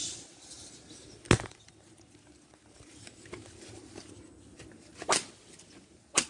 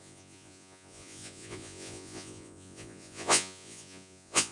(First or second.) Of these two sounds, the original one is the first